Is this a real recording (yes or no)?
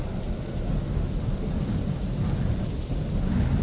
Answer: yes